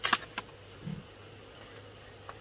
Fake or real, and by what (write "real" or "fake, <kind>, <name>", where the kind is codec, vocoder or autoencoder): real